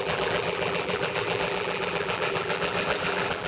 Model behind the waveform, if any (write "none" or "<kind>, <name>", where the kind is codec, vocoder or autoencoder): vocoder, BigVGAN v2